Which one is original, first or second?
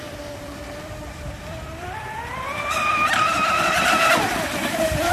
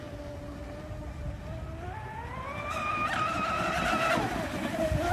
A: second